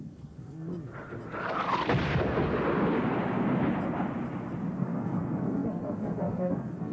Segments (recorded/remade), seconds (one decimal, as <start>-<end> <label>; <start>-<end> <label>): 0.0-0.7 remade; 0.7-4.8 recorded; 4.8-6.9 remade